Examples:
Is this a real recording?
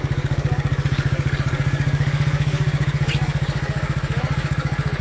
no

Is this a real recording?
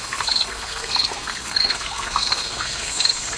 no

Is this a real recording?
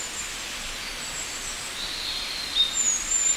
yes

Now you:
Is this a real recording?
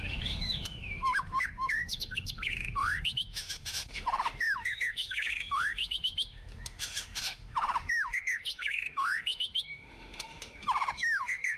no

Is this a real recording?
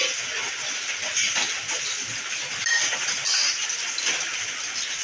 yes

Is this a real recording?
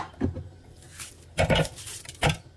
yes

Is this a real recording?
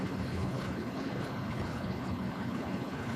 no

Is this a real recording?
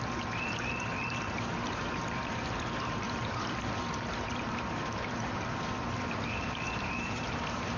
no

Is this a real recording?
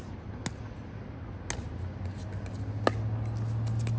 yes